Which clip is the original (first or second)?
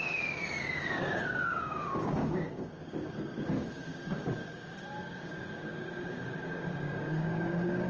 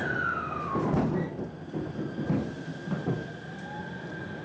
second